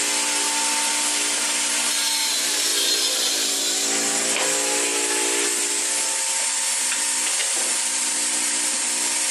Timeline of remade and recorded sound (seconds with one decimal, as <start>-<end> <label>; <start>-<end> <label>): 0.0-2.7 recorded; 2.7-3.6 remade; 3.6-7.4 recorded; 7.4-9.3 remade